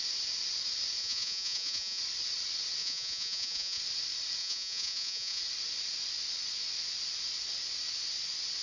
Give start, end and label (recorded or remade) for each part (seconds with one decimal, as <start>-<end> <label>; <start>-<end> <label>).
0.0-1.0 recorded; 1.0-2.0 remade; 2.0-2.8 recorded; 2.8-3.8 remade; 3.8-4.4 recorded; 4.4-5.4 remade; 5.4-8.6 recorded